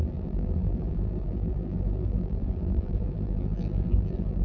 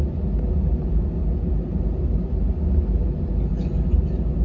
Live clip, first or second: second